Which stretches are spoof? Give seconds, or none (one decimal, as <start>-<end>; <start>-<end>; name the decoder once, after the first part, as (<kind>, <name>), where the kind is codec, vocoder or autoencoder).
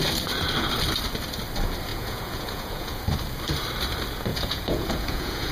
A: 1.9-3.0 (vocoder, Vocos); 4.3-5.5